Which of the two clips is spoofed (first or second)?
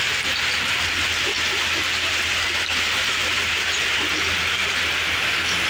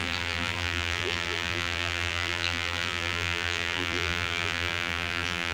second